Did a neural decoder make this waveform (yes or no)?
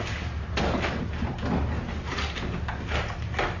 no